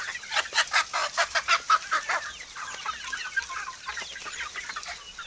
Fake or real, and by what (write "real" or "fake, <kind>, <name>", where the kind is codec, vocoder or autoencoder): real